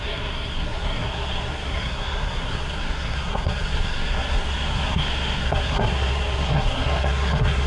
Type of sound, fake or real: fake